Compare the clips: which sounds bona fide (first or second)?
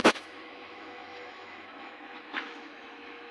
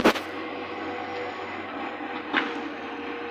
second